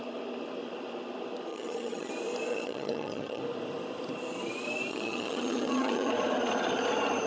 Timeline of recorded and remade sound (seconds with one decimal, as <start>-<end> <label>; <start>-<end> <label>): 0.0-1.5 recorded; 1.5-2.1 remade; 2.1-2.5 recorded; 2.5-3.4 remade; 3.4-4.9 recorded; 4.9-6.1 remade; 6.1-7.3 recorded